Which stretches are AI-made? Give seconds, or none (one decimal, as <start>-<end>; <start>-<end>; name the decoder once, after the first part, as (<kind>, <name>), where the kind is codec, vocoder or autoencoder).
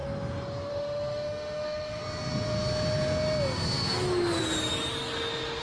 0.7-2.0 (autoencoder, DAC-VAE)